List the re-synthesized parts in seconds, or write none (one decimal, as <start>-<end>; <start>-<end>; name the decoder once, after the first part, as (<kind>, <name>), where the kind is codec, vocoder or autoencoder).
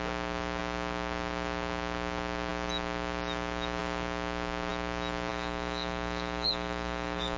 5.3-7.4 (codec, DAC)